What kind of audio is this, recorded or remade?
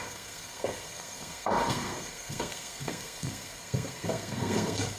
remade